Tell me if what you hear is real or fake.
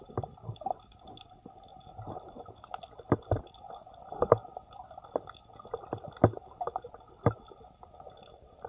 real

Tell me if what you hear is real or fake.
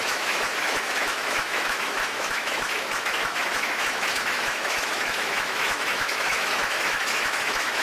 fake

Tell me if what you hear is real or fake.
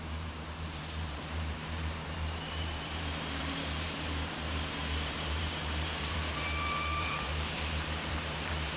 fake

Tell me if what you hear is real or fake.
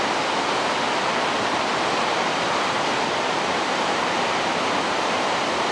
real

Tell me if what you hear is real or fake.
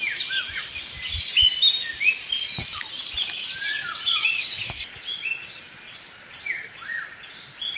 real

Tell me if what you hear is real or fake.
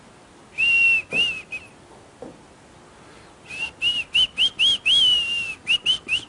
real